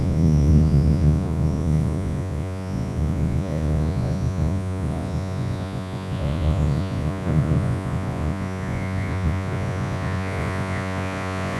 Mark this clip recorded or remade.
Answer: remade